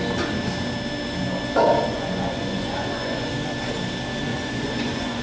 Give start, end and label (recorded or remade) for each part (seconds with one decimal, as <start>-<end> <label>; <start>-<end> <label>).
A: 0.0-1.9 recorded; 1.9-3.3 remade; 3.3-4.3 recorded; 4.3-5.2 remade